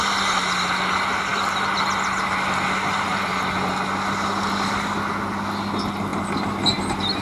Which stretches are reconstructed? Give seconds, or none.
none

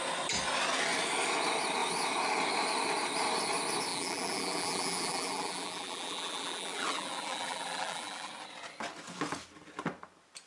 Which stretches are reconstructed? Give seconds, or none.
3.9-8.3 (vocoder, BigVGAN v2)